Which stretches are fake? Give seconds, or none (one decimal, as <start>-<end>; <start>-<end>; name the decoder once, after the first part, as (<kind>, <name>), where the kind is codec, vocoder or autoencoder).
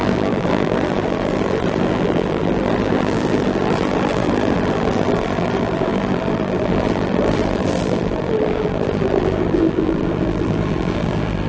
0.0-11.5 (vocoder, BigVGAN v2)